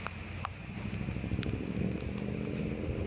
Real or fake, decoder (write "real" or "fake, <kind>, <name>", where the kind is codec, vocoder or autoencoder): real